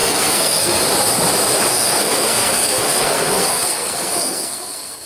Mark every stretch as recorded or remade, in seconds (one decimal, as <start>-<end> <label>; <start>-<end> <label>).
0.0-0.8 remade; 0.8-1.7 recorded; 1.7-5.1 remade